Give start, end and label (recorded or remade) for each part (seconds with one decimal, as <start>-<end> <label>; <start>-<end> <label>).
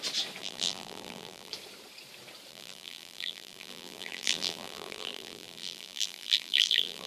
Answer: 0.0-0.4 recorded; 0.4-1.5 remade; 1.5-2.5 recorded; 2.5-7.1 remade